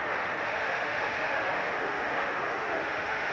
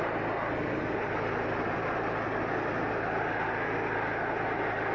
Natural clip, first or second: second